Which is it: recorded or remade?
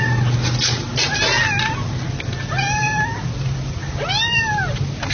recorded